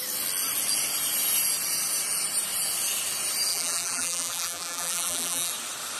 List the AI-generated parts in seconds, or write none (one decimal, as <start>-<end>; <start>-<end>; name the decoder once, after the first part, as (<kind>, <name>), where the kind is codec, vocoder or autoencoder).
3.5-5.5 (vocoder, BigVGAN v2)